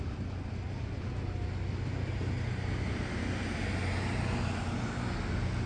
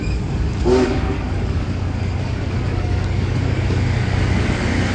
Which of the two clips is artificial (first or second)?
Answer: second